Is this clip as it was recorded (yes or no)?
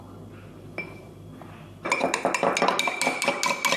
yes